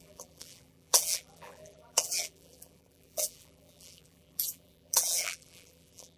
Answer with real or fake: fake